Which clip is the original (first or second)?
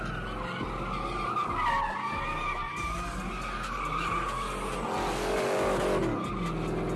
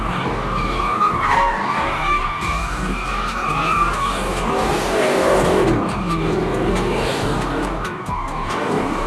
first